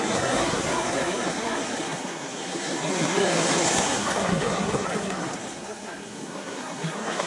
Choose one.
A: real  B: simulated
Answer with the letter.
B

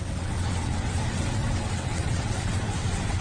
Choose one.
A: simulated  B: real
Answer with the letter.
A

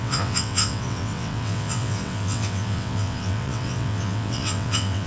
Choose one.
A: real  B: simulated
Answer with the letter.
B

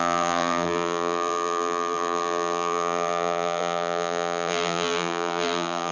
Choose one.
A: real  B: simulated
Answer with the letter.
B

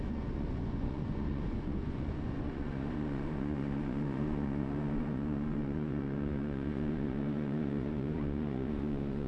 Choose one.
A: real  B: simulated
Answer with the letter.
B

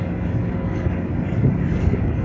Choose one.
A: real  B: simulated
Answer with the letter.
B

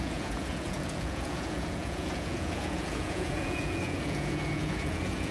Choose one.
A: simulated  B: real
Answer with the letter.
A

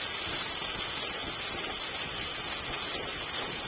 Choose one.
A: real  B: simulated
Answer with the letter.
A